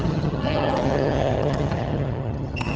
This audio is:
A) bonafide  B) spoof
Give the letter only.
B